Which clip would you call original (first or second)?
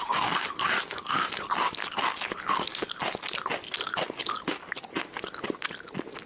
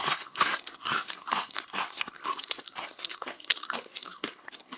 first